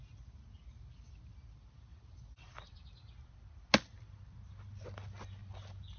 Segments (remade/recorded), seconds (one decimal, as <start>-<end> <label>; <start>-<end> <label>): 0.0-6.0 recorded